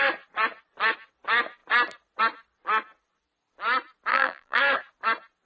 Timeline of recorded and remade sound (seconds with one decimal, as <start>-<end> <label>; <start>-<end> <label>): 0.0-4.1 recorded; 4.1-4.6 remade; 4.6-5.5 recorded